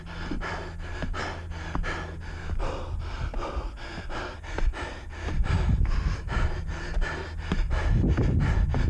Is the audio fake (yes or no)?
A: no